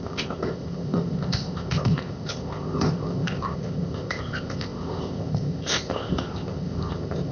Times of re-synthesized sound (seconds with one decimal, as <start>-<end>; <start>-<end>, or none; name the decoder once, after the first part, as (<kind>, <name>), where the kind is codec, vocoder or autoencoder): 0.0-7.3 (codec, ZipCodec)